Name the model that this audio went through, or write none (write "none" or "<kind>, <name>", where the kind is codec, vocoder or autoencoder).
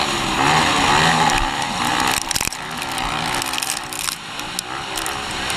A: none